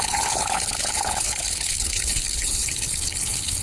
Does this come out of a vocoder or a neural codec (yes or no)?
yes